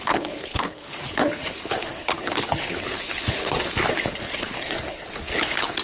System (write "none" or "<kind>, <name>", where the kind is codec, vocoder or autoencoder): codec, HILCodec